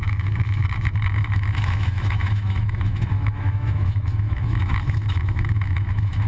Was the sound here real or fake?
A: fake